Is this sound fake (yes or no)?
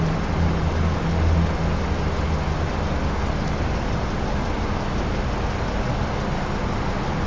no